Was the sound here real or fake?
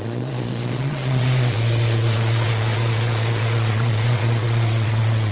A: fake